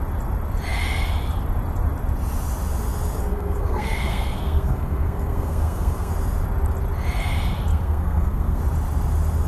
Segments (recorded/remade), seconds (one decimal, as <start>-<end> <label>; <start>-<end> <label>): 0.0-3.2 recorded; 3.2-6.1 remade; 6.1-7.7 recorded; 7.7-8.6 remade; 8.6-9.5 recorded